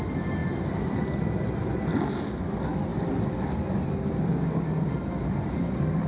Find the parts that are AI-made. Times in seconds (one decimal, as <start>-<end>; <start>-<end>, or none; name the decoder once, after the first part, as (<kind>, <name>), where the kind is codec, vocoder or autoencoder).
none